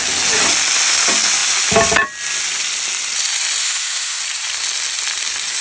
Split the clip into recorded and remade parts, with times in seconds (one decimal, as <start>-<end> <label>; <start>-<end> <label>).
0.0-3.6 recorded; 3.6-4.2 remade; 4.2-5.6 recorded